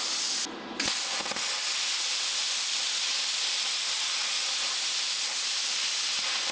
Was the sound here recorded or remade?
recorded